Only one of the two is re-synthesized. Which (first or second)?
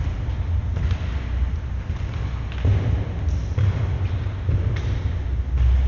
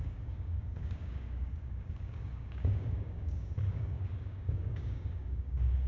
second